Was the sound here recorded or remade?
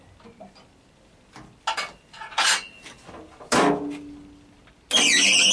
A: recorded